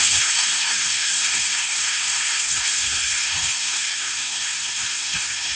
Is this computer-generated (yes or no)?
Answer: yes